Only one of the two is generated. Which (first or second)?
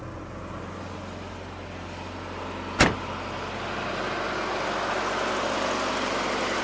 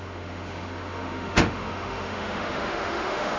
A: second